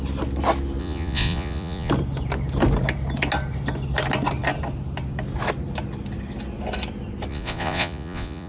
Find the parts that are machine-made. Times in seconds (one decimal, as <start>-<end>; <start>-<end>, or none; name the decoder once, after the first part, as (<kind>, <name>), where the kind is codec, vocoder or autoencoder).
0.8-1.9 (vocoder, Vocos); 7.3-8.5